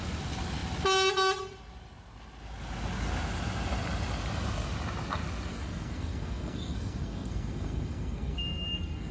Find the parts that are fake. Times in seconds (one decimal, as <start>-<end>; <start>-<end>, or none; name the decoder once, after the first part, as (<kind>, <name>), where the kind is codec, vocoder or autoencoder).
5.5-9.1 (codec, SNAC)